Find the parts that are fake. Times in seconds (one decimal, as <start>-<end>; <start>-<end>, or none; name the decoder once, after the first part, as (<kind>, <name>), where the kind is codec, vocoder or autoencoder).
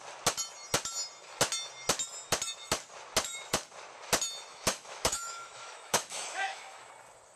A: 4.5-6.9 (autoencoder, DAC-VAE)